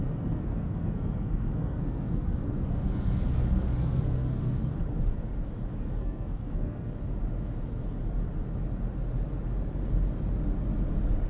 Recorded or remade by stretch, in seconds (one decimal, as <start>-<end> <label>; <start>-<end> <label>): 0.0-4.7 remade; 4.7-5.7 recorded; 5.7-6.9 remade; 6.9-11.3 recorded